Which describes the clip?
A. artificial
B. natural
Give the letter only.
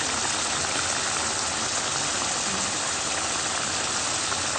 B